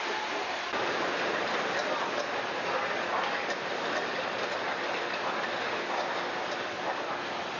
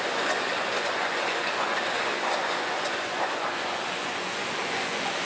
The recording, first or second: first